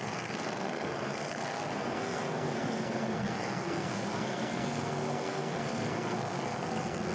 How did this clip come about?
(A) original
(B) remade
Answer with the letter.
B